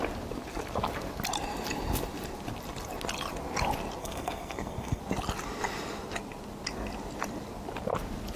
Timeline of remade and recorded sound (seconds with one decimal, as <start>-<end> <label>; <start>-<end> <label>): 0.0-4.0 recorded; 4.0-5.0 remade; 5.0-8.4 recorded